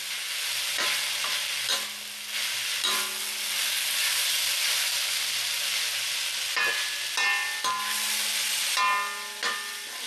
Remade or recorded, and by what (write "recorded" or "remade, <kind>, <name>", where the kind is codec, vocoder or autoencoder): recorded